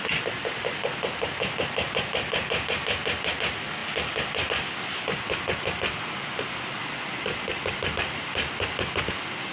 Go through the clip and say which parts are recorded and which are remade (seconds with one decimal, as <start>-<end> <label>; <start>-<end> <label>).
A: 0.0-9.5 recorded